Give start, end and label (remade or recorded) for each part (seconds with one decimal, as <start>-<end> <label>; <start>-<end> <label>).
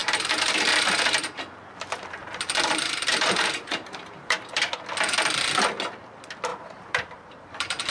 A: 0.0-4.7 remade; 4.7-6.5 recorded; 6.5-7.5 remade; 7.5-7.9 recorded